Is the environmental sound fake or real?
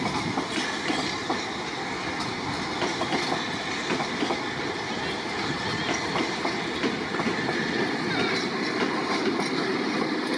real